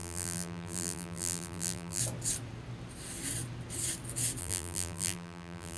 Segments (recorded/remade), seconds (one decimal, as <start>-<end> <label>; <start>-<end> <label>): 0.0-2.0 remade; 2.0-4.4 recorded; 4.4-5.8 remade